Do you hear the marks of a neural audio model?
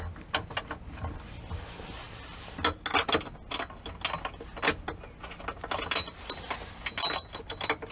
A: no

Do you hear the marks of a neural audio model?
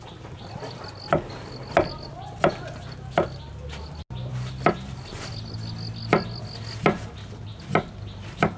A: no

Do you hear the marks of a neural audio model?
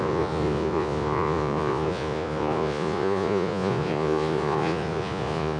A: yes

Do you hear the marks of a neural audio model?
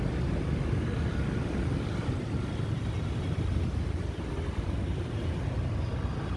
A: no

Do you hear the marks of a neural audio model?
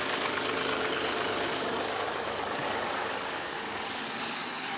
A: yes